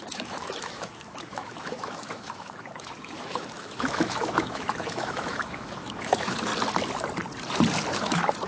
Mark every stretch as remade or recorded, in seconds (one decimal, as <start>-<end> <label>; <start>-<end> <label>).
0.0-6.5 remade; 6.5-7.9 recorded; 7.9-8.5 remade